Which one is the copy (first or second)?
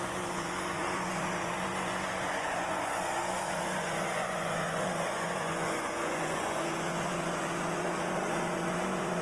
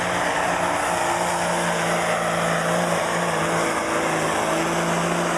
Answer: first